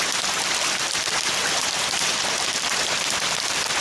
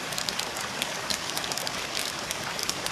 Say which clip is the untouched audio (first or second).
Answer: first